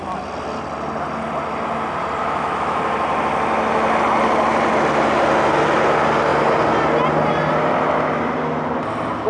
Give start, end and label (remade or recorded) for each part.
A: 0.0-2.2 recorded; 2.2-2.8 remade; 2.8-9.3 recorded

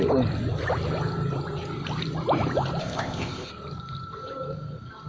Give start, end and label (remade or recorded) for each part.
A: 0.0-2.8 recorded; 2.8-3.5 remade; 3.5-5.1 recorded

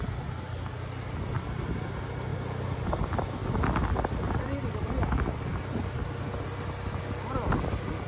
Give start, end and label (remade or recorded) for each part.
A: 0.0-8.1 recorded

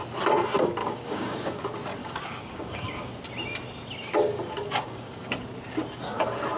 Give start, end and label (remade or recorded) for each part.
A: 0.0-0.8 recorded; 0.8-1.6 remade; 1.6-2.0 recorded; 2.0-3.2 remade; 3.2-4.8 recorded; 4.8-5.4 remade; 5.4-6.6 recorded

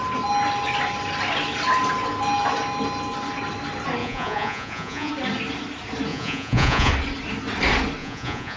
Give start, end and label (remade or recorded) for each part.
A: 0.0-4.0 recorded; 4.0-5.1 remade; 5.1-6.1 recorded; 6.1-6.9 remade; 6.9-8.0 recorded; 8.0-8.6 remade

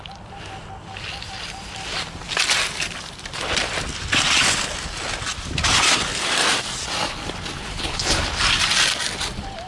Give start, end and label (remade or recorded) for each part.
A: 0.0-7.6 recorded; 7.6-8.2 remade; 8.2-9.7 recorded

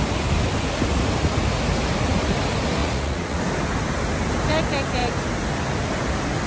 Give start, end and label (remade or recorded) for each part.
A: 0.0-2.8 recorded; 2.8-3.4 remade; 3.4-6.5 recorded

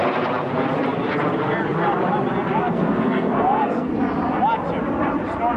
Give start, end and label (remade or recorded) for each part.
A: 0.0-2.6 recorded; 2.6-3.9 remade; 3.9-5.6 recorded